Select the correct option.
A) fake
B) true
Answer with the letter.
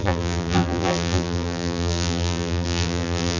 A